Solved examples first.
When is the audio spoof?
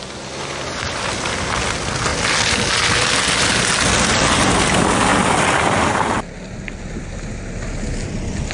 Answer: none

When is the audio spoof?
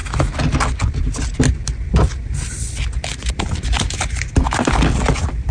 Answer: 3.3-5.5 (vocoder, BigVGAN v2)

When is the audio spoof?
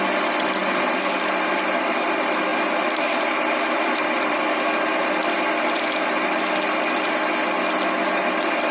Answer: 2.5-4.6 (vocoder, BigVGAN v2)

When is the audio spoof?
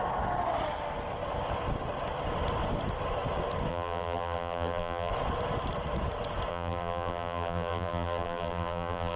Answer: 3.7-5.1 (vocoder, BigVGAN v2); 6.5-9.2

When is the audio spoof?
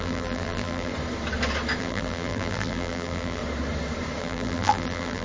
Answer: 0.0-0.9 (vocoder, BigVGAN v2); 1.8-3.4; 4.2-5.2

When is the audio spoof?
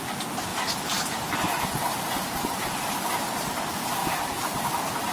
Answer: 0.5-3.6 (vocoder, BigVGAN v2); 4.0-4.6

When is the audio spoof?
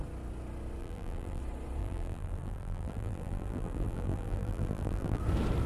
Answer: 0.8-1.4 (vocoder, BigVGAN v2); 1.8-5.2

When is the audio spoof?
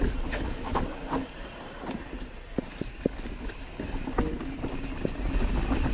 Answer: none